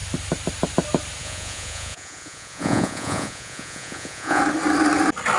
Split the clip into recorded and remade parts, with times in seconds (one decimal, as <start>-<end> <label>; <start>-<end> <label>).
0.0-1.2 recorded; 1.2-4.4 remade; 4.4-5.4 recorded